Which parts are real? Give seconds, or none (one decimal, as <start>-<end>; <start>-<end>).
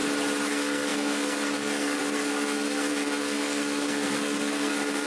0.0-0.5